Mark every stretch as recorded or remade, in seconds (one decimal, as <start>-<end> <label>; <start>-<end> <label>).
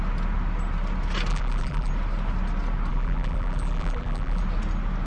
0.0-1.3 recorded; 1.3-1.9 remade; 1.9-2.9 recorded; 2.9-4.4 remade; 4.4-5.1 recorded